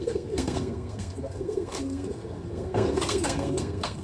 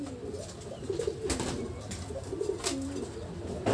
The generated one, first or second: first